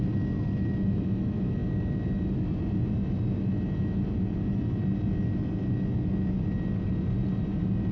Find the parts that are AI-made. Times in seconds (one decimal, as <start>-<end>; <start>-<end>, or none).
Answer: none